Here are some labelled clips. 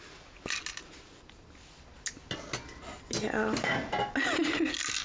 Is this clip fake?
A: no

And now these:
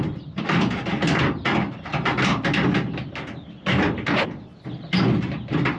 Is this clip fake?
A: no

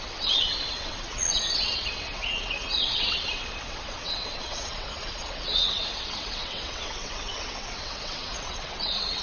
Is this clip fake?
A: yes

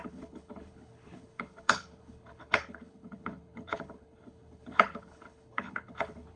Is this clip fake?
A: yes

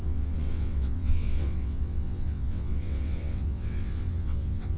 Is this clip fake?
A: yes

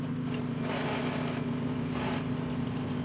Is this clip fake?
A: no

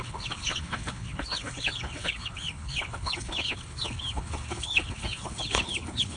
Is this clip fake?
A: yes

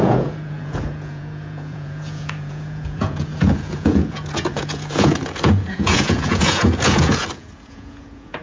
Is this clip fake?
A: yes